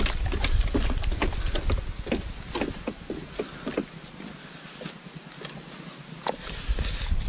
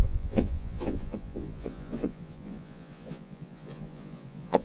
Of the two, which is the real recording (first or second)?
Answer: first